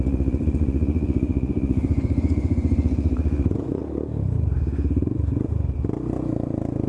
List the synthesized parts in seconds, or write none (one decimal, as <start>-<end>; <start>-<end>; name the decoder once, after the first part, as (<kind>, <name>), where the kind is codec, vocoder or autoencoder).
0.0-3.8 (vocoder, Vocos)